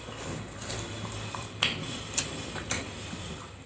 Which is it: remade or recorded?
remade